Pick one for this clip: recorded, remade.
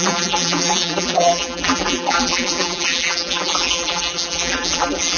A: remade